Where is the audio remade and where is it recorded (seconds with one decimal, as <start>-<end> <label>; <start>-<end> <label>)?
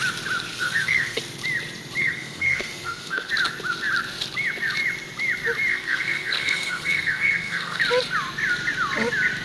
0.0-0.5 recorded; 0.5-1.2 remade; 1.2-2.0 recorded; 2.0-3.3 remade; 3.3-5.7 recorded; 5.7-7.8 remade; 7.8-9.4 recorded